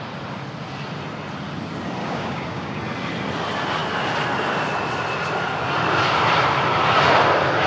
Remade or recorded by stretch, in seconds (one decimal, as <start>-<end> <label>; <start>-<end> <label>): 0.0-2.0 recorded; 2.0-2.8 remade; 2.8-7.7 recorded